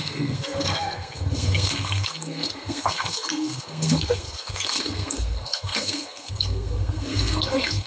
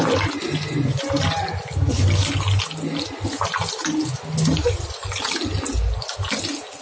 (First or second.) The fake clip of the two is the first